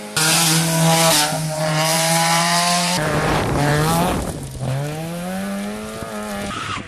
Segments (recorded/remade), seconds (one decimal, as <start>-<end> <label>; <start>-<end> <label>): 0.0-1.6 recorded; 1.6-3.7 remade; 3.7-6.9 recorded